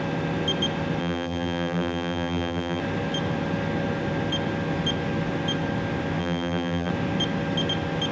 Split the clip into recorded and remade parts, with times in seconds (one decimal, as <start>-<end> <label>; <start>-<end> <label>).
0.0-1.0 recorded; 1.0-2.8 remade; 2.8-6.2 recorded; 6.2-6.9 remade; 6.9-8.1 recorded